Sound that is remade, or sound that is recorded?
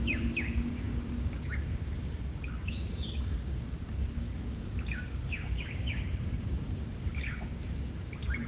remade